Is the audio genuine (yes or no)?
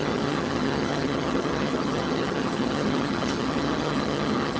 no